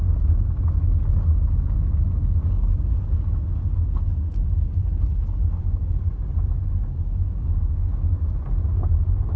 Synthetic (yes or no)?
no